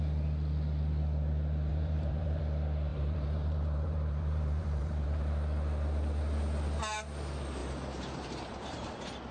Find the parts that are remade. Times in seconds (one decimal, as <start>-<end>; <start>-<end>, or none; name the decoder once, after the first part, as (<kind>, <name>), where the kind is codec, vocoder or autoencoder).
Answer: 1.7-2.4 (vocoder, BigVGAN v2); 2.9-5.2; 7.6-8.9